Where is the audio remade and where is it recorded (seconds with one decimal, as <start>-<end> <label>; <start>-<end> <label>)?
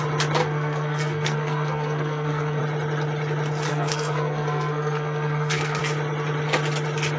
0.0-0.4 recorded; 0.4-2.6 remade; 2.6-3.7 recorded; 3.7-5.8 remade; 5.8-7.2 recorded